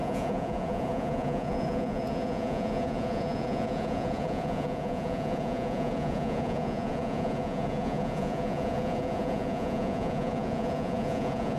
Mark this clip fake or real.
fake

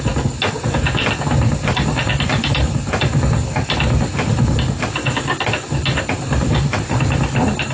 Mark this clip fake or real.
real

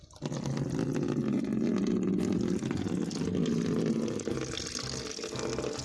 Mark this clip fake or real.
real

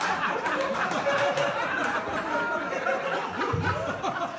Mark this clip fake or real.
real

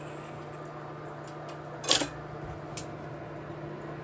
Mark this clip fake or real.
real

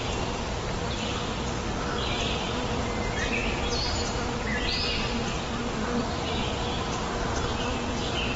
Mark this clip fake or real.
real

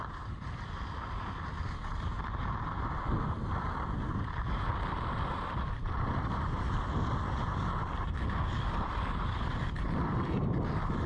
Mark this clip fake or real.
real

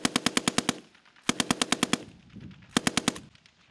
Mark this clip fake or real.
real